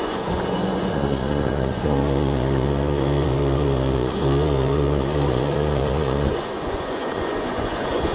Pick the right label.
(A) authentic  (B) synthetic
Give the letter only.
B